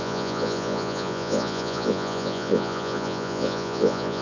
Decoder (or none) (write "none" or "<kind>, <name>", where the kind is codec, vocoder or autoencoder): vocoder, Vocos